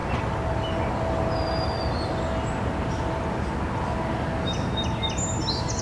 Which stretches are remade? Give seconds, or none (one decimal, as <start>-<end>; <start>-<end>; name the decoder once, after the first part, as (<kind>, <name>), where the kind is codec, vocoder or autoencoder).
none